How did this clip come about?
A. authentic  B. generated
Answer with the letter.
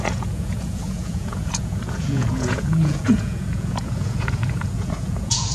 B